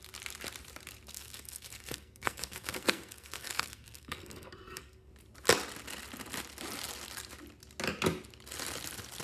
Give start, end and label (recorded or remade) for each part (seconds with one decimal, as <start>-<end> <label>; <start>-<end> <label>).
0.0-1.1 recorded; 1.1-5.1 remade; 5.1-9.2 recorded